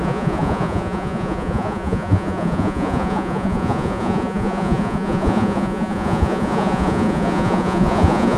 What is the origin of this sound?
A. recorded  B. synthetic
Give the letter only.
B